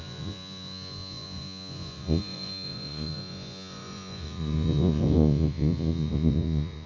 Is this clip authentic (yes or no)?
no